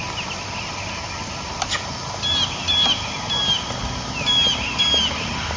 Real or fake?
real